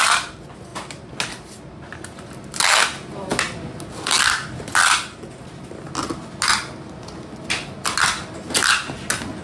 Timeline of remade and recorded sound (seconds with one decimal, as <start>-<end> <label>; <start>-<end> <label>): 0.0-9.4 recorded